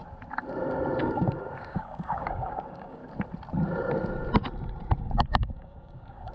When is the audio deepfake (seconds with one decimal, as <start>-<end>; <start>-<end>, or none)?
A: 1.0-3.0; 5.0-6.3